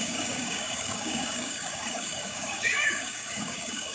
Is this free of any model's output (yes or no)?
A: no